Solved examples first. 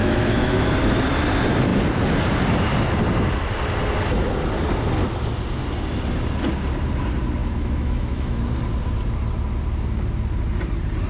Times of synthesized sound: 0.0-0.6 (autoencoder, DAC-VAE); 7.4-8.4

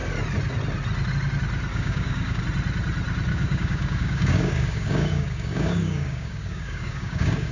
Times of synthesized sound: 1.7-2.4 (codec, DAC); 3.3-7.5

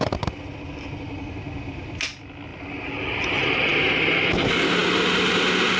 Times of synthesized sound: none